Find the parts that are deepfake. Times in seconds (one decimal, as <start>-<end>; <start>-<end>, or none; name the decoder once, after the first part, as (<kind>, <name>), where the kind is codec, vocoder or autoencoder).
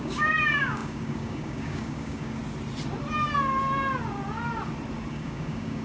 0.0-2.4 (codec, DAC); 5.1-5.8